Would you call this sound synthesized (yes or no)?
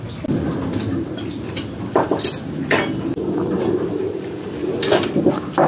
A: no